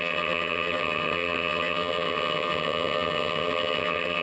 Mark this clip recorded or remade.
remade